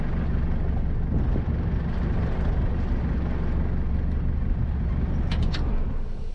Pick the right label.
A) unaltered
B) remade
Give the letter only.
A